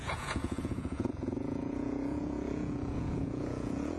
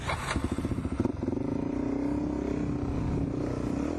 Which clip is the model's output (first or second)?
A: first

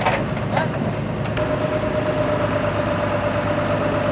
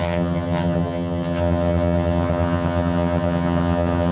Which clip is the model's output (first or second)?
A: second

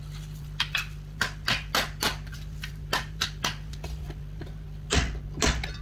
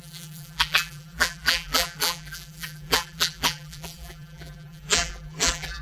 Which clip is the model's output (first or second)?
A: second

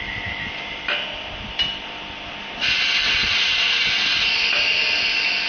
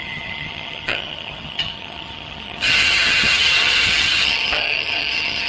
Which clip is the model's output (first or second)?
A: second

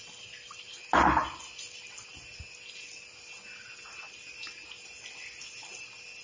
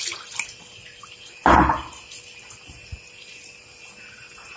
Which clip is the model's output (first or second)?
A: second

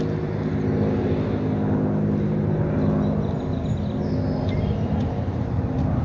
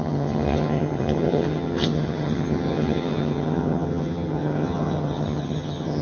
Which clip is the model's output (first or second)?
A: second